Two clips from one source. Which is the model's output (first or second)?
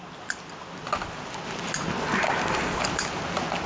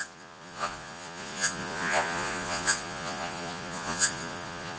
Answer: second